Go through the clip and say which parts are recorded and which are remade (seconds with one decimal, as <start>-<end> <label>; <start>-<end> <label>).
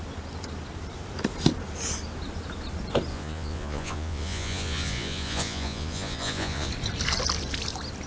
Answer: 0.0-3.1 recorded; 3.1-6.7 remade; 6.7-8.1 recorded